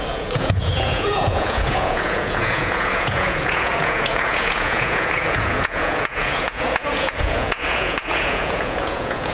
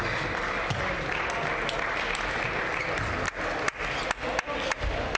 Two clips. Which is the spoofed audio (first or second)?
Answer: first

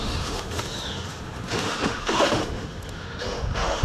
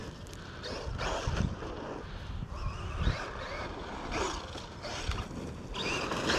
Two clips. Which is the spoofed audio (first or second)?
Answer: first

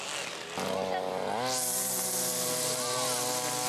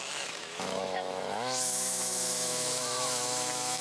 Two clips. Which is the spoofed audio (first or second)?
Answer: second